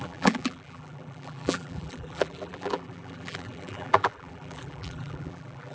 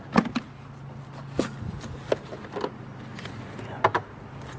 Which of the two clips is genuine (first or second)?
second